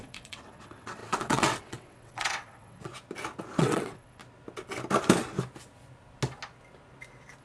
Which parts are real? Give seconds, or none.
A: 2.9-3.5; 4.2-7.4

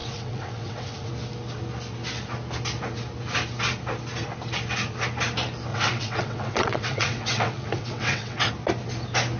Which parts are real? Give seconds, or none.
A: 1.1-5.7; 8.5-9.4

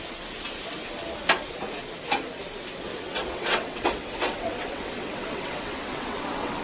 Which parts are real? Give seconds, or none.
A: 0.0-2.9

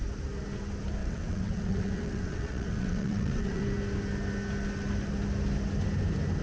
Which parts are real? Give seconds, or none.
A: 0.0-1.0; 3.6-6.4

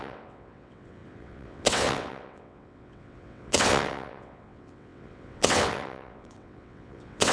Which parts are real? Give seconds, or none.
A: none

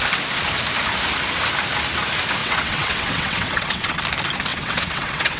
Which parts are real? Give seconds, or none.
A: 0.0-2.4; 4.0-4.5